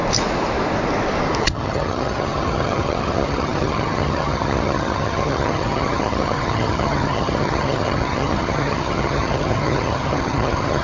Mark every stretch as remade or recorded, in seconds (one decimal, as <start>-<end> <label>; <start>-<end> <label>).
0.0-1.4 recorded; 1.4-10.8 remade